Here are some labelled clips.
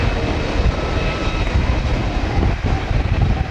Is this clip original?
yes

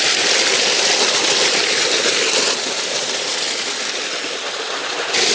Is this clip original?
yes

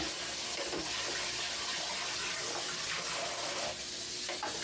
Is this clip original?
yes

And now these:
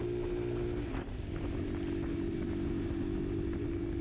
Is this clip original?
yes